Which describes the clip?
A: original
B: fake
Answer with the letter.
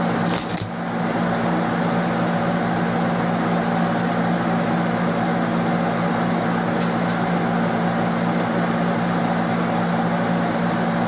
A